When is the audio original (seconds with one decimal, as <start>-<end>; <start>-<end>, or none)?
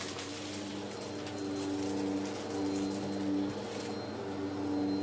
0.0-5.0